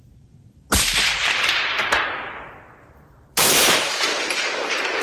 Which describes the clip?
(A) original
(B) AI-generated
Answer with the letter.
B